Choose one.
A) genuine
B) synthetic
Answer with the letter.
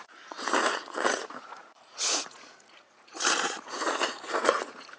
B